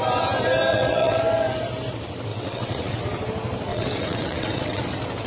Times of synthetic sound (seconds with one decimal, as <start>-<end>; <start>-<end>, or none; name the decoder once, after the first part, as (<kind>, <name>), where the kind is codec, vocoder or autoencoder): 0.7-1.2 (vocoder, WaveNeXt); 2.3-3.0; 3.7-4.8